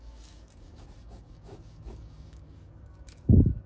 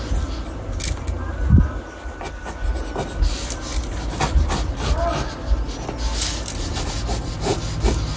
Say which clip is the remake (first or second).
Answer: first